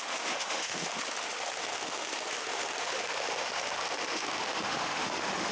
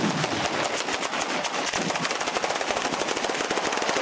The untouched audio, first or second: second